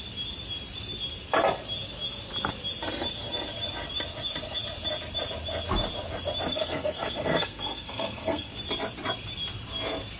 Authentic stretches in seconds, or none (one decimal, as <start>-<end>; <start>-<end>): 0.0-6.5; 8.5-10.2

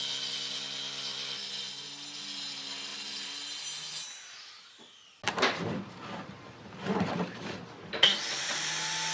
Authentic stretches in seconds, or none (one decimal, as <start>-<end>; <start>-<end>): 0.0-9.1

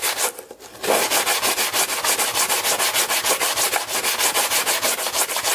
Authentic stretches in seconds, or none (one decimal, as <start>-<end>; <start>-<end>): 0.0-5.5

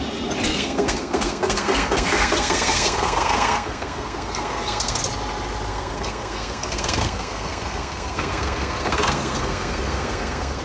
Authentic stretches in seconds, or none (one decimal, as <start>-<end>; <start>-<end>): 0.0-0.5; 5.0-5.7

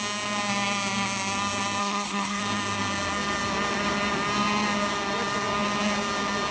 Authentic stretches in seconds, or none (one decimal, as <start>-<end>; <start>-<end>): 0.0-1.8; 2.4-6.5

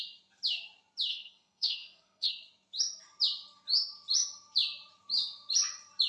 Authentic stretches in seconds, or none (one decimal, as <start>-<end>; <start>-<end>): 0.0-1.1; 2.3-6.1